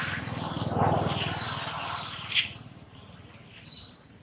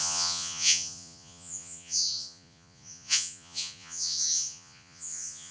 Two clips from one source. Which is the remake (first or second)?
second